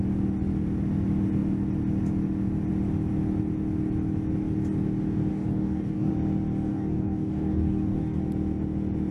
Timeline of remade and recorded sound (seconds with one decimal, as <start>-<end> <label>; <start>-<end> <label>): 0.0-5.3 recorded; 5.3-6.1 remade; 6.1-6.7 recorded; 6.7-8.2 remade; 8.2-9.1 recorded